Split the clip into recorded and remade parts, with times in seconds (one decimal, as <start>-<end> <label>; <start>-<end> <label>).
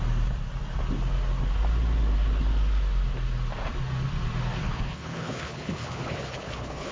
0.0-4.6 recorded; 4.6-6.9 remade